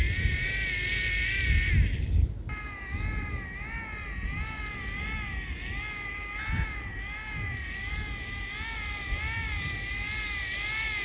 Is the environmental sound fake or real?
real